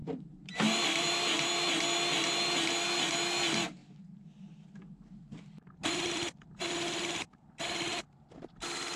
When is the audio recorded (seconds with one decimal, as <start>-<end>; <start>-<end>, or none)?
1.5-3.8; 8.3-9.0